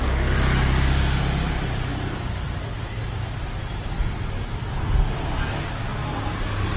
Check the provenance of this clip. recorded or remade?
recorded